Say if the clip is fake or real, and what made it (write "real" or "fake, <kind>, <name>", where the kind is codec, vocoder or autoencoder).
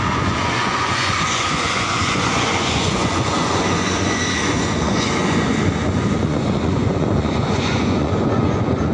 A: fake, vocoder, Vocos